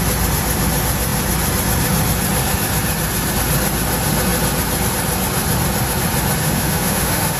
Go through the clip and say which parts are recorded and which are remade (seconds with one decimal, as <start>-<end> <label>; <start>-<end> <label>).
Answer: 0.0-6.4 recorded; 6.4-7.4 remade